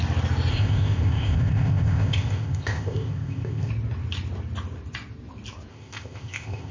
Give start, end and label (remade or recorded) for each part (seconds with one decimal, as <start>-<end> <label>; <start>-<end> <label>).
0.0-0.5 recorded; 0.5-3.7 remade; 3.7-5.7 recorded; 5.7-6.7 remade